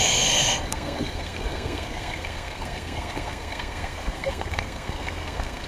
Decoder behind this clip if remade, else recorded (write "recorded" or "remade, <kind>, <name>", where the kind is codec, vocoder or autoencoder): remade, codec, SNAC